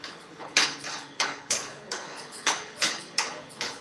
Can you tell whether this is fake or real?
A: fake